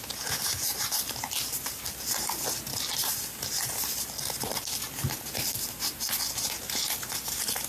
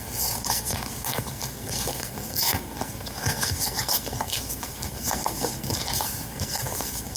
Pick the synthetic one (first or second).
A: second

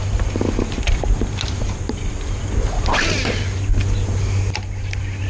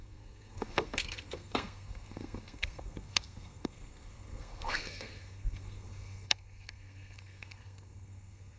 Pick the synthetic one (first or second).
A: second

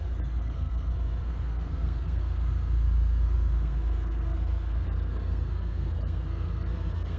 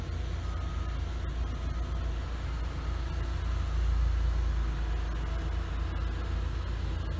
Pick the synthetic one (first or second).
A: first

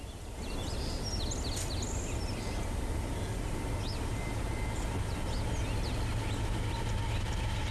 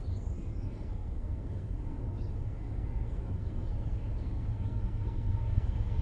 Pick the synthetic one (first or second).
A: second